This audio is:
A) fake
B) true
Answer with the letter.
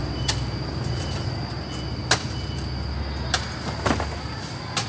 B